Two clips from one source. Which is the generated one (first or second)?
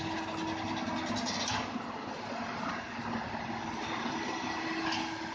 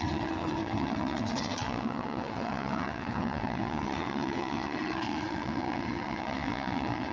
second